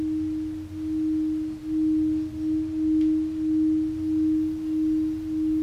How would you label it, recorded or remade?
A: recorded